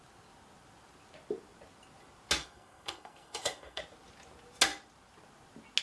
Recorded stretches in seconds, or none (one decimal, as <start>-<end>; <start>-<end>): 0.0-2.4; 3.8-5.8